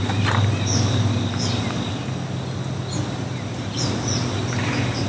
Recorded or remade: recorded